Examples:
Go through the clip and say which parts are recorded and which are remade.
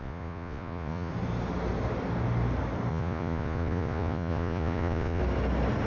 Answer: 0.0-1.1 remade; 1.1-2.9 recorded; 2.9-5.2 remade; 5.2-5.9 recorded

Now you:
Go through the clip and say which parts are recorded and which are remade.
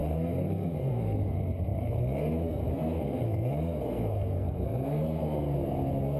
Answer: 0.0-6.2 remade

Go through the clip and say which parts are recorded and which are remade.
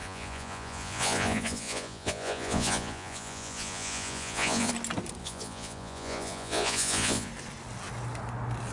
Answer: 0.0-4.7 remade; 4.7-5.2 recorded; 5.2-7.3 remade; 7.3-8.7 recorded